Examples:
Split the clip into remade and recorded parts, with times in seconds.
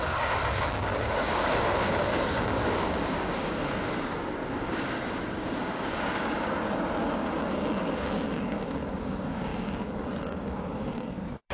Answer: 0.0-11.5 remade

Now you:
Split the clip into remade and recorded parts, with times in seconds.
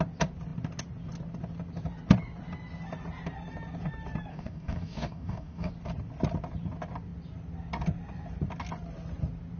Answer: 0.0-4.3 recorded; 4.3-5.7 remade; 5.7-9.6 recorded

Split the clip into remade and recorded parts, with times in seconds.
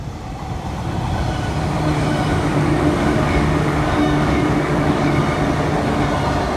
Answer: 0.0-2.5 recorded; 2.5-5.2 remade; 5.2-6.6 recorded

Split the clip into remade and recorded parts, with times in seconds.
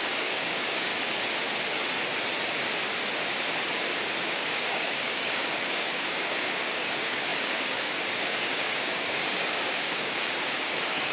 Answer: 0.0-0.9 remade; 0.9-4.2 recorded; 4.2-11.1 remade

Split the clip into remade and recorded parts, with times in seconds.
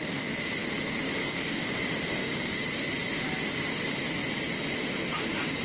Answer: 0.0-1.2 recorded; 1.2-1.8 remade; 1.8-2.2 recorded; 2.2-2.9 remade; 2.9-5.6 recorded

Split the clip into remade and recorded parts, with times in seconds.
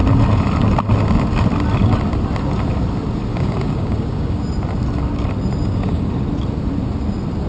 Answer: 0.0-3.3 recorded; 3.3-4.4 remade; 4.4-5.6 recorded; 5.6-6.1 remade; 6.1-7.5 recorded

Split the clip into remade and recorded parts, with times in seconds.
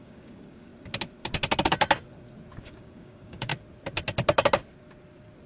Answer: 0.0-0.7 remade; 0.7-2.6 recorded; 2.6-3.5 remade; 3.5-5.5 recorded